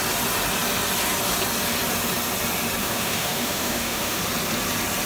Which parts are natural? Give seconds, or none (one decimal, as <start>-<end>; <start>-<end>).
0.0-2.8; 4.2-5.1